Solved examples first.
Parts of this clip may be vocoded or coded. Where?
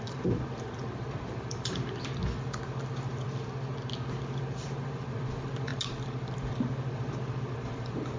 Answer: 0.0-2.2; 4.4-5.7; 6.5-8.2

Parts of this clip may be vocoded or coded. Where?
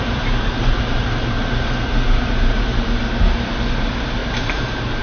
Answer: 0.0-3.0; 3.7-5.0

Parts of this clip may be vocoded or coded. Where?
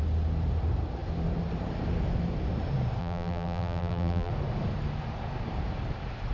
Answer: 3.0-4.3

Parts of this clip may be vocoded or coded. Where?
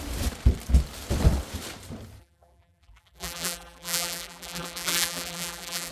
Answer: 2.2-5.9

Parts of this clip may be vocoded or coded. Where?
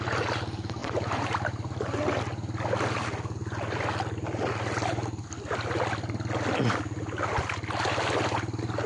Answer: 0.8-2.2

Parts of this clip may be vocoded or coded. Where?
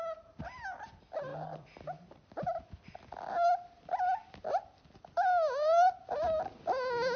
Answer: none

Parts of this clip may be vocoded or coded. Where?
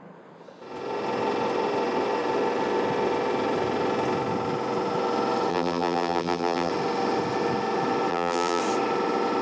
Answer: 5.5-6.7; 8.1-8.6